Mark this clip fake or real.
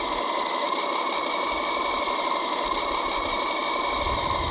real